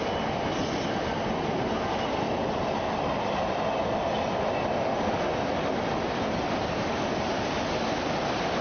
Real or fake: real